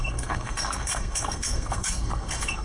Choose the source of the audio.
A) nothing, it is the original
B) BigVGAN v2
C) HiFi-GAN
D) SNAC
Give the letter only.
D